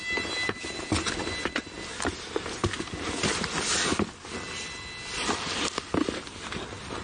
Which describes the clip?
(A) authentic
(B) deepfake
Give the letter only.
A